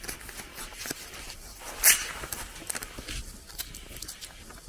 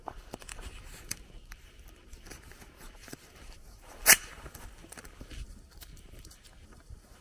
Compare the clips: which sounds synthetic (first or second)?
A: second